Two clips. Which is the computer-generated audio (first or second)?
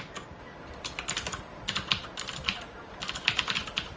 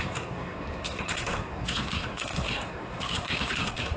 second